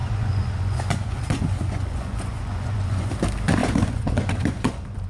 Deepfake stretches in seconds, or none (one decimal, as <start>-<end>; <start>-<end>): 0.0-3.1; 3.6-5.1